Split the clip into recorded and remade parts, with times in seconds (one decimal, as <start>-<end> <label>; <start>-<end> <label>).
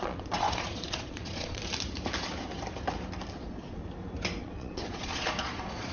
0.0-1.6 remade; 1.6-3.3 recorded; 3.3-3.8 remade; 3.8-4.4 recorded; 4.4-5.9 remade